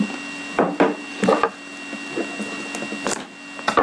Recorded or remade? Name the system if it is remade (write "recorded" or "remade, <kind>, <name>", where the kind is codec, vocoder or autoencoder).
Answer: recorded